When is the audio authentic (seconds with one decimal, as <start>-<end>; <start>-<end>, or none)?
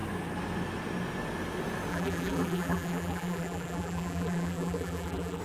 0.0-1.9